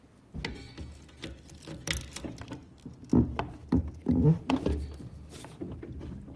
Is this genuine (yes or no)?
yes